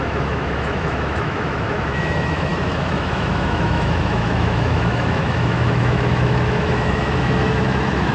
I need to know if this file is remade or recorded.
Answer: remade